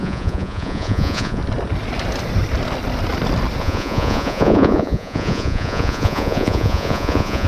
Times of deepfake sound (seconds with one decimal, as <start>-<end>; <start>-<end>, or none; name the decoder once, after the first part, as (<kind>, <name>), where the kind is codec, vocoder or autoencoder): 0.0-1.4 (vocoder, Vocos); 3.6-7.5